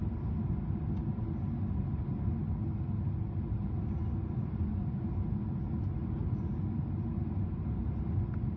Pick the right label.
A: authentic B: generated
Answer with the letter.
A